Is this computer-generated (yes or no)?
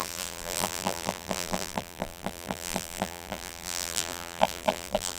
yes